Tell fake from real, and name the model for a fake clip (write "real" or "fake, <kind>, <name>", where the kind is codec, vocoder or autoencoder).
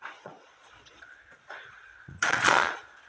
fake, vocoder, Vocos